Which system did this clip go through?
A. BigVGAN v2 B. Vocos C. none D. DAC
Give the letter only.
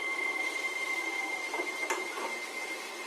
A